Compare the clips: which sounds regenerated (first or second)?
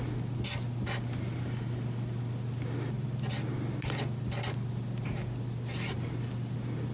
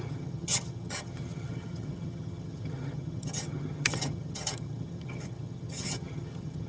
second